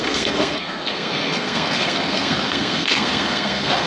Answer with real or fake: fake